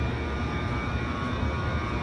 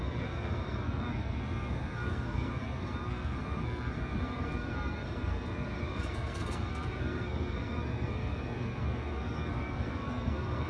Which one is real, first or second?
first